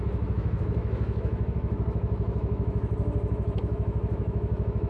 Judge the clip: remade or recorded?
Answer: remade